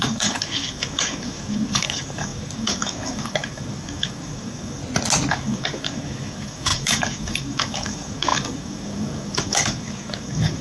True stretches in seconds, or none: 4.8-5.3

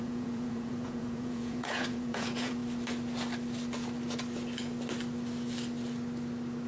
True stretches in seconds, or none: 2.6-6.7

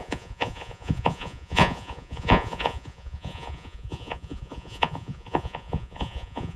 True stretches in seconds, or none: none

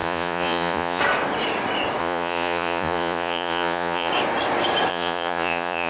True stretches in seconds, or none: 1.0-2.0; 4.1-4.9

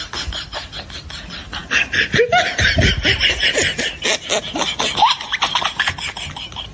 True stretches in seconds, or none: 0.0-6.7